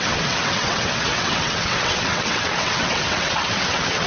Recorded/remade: remade